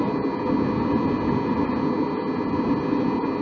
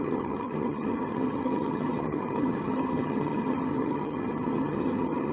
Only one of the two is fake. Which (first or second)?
second